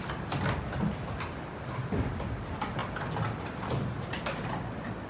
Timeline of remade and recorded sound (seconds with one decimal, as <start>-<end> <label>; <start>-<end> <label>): 0.0-5.1 recorded